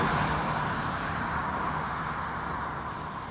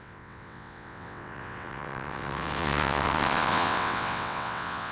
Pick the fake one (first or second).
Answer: second